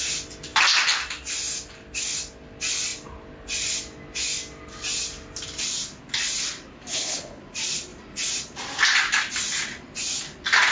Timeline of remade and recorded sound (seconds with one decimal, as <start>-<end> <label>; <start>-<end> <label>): 0.0-6.9 recorded; 6.9-7.4 remade; 7.4-10.7 recorded